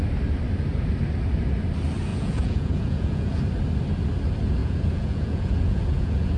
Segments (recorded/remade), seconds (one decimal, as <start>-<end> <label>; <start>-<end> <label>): 0.0-2.1 recorded; 2.1-3.4 remade; 3.4-4.6 recorded; 4.6-6.4 remade